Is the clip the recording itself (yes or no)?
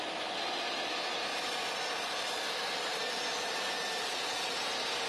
yes